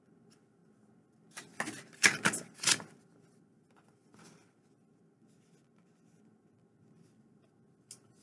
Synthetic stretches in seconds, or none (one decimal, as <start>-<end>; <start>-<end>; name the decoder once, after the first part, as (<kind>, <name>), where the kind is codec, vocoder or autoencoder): none